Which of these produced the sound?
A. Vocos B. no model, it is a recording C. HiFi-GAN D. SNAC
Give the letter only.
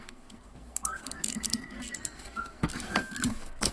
D